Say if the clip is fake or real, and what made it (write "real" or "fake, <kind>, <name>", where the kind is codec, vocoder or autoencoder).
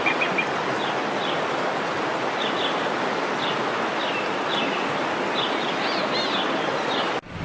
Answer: real